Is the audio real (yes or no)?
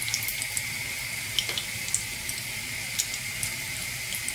yes